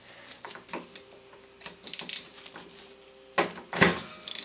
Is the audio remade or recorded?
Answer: recorded